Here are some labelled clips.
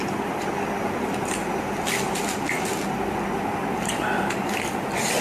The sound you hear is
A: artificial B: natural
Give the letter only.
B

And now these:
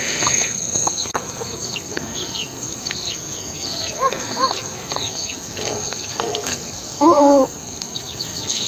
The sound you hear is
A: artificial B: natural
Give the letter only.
A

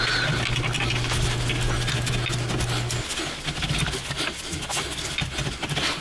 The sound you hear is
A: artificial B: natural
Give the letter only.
B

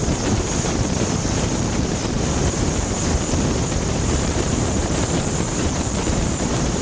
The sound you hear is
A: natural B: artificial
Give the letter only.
B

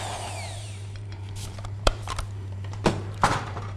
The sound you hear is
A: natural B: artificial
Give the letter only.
B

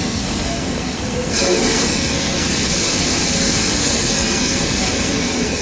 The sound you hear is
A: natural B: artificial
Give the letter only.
B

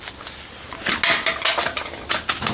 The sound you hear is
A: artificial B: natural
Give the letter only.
B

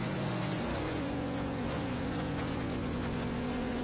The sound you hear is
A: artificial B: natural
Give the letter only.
A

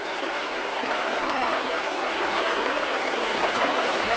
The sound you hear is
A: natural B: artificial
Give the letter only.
B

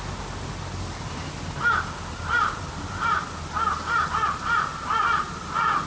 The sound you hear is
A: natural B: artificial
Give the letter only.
A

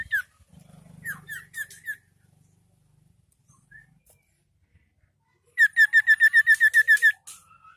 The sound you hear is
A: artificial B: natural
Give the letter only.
B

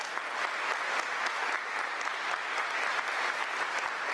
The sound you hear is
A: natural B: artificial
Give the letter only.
A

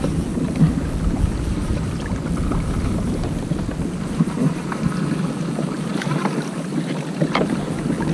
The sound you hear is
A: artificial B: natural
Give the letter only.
B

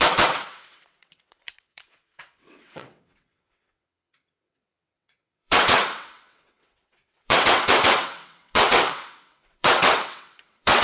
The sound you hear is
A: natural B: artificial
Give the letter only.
B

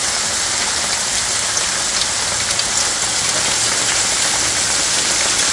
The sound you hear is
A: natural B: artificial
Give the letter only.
A